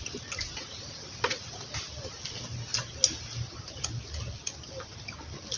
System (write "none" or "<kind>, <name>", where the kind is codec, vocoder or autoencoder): none